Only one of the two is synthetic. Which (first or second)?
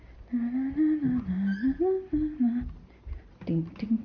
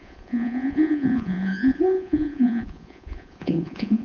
second